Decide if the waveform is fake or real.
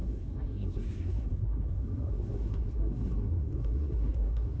fake